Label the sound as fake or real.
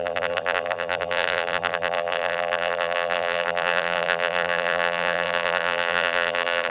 fake